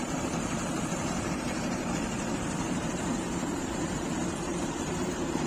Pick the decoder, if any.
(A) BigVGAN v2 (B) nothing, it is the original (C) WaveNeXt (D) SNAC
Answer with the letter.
A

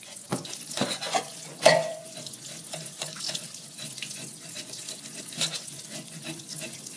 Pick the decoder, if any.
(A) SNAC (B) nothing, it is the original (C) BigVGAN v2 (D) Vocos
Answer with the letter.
D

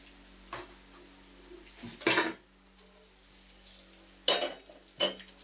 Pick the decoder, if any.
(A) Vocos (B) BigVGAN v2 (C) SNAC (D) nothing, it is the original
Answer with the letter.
D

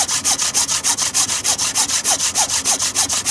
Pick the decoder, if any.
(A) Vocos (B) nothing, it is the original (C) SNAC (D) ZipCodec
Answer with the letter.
B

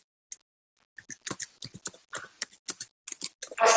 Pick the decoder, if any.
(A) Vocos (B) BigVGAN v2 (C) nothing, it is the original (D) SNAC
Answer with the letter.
C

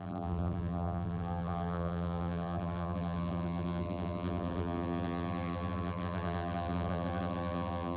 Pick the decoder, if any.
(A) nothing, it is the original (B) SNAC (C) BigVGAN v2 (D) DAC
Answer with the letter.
C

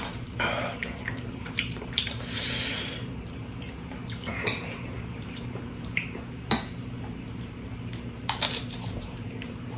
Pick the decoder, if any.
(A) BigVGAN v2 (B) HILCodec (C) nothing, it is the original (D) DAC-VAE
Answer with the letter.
A